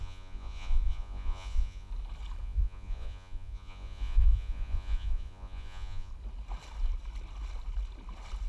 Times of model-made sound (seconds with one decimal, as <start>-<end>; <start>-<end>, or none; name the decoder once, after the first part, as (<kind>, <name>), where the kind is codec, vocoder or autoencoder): 0.0-1.9 (vocoder, Vocos); 2.4-6.1